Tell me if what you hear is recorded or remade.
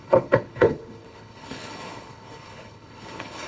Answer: remade